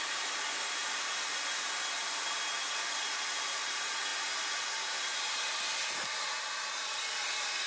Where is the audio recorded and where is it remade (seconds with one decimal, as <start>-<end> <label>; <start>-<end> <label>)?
0.0-7.7 recorded